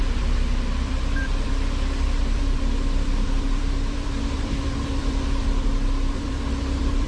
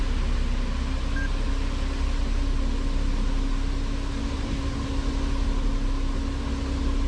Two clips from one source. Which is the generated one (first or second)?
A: first